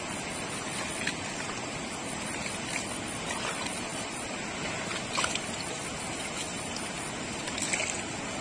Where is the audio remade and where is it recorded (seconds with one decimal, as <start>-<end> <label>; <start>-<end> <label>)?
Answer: 0.0-8.4 recorded